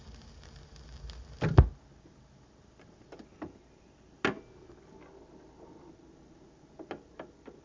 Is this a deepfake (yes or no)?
no